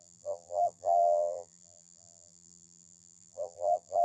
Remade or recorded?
remade